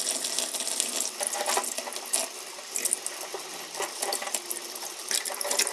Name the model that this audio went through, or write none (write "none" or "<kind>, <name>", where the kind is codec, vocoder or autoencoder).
none